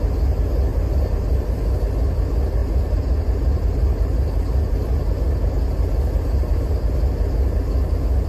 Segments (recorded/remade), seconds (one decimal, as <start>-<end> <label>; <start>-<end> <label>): 0.0-0.7 recorded; 0.7-1.7 remade; 1.7-2.6 recorded; 2.6-6.7 remade; 6.7-8.3 recorded